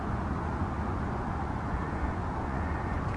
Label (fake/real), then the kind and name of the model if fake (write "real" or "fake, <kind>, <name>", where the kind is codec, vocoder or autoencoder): fake, vocoder, Vocos